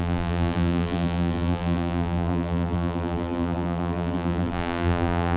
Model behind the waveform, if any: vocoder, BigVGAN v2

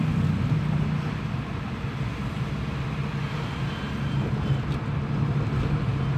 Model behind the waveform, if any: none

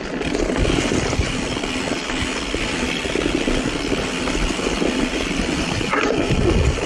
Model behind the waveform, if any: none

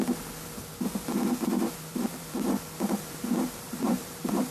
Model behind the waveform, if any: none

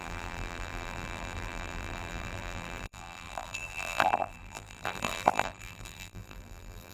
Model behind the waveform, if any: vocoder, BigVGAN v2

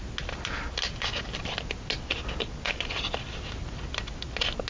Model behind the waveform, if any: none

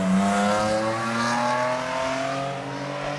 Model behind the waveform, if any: none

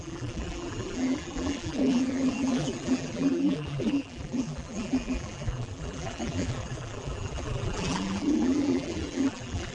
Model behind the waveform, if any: vocoder, BigVGAN v2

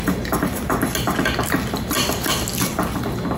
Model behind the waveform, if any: none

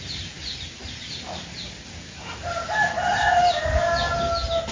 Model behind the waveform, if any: none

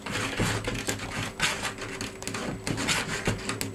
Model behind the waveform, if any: none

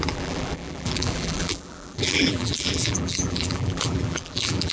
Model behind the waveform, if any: vocoder, BigVGAN v2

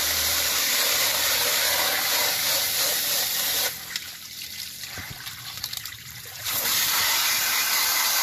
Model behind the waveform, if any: vocoder, BigVGAN v2